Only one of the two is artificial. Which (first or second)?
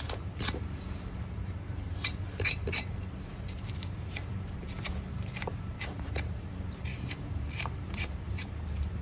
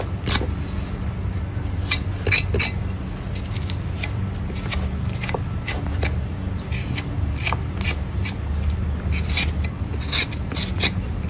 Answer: first